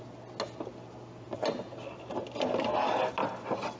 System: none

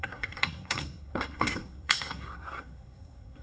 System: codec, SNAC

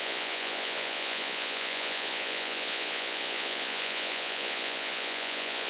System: vocoder, Vocos